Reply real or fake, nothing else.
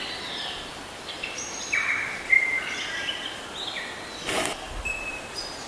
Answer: fake